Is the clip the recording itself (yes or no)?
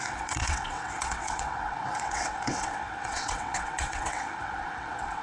no